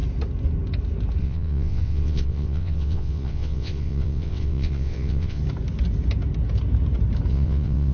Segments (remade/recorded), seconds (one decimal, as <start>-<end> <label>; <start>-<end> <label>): 0.0-1.2 recorded; 1.2-5.4 remade; 5.4-7.3 recorded; 7.3-7.9 remade